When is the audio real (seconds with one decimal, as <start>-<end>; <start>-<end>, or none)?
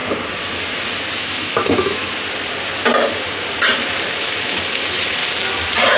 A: 0.0-1.2; 2.0-4.2; 5.2-6.0